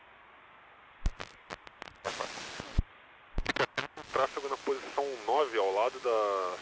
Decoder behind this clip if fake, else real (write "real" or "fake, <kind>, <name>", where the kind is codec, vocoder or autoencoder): real